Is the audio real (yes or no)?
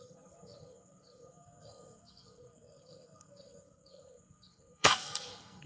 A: no